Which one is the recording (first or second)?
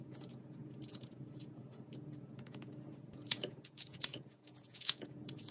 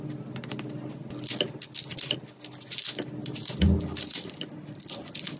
second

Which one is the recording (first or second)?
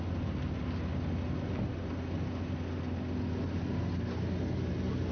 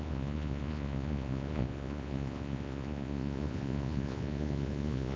first